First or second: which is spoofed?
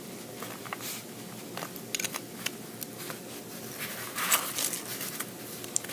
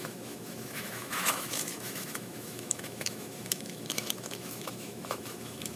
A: second